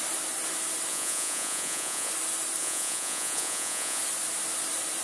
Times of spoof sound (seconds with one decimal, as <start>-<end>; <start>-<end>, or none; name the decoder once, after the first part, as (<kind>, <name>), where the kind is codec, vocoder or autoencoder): 0.9-2.1 (vocoder, Vocos); 2.6-4.0